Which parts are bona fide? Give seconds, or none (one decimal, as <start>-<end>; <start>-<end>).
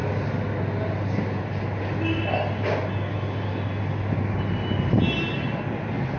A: 0.0-6.2